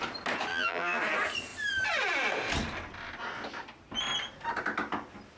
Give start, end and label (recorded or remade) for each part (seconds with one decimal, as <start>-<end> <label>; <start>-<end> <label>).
0.0-0.5 recorded; 0.5-1.0 remade; 1.0-5.4 recorded